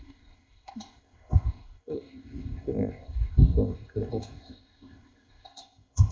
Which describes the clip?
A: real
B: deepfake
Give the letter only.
B